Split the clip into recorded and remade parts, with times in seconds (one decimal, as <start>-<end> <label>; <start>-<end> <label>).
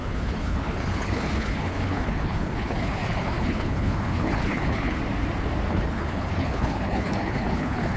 0.0-5.0 remade; 5.0-5.7 recorded; 5.7-8.0 remade